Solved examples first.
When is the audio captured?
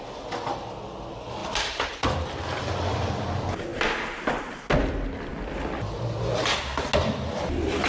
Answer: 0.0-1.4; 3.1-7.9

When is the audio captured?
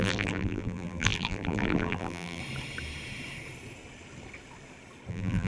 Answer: 2.4-5.1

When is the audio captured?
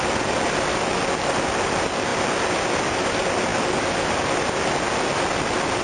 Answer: 0.0-3.5; 4.1-5.8